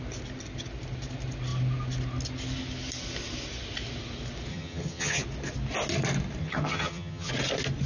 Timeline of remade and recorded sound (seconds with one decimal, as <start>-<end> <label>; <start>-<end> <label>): 0.0-4.5 recorded; 4.5-5.2 remade; 5.2-6.4 recorded; 6.4-7.3 remade; 7.3-7.9 recorded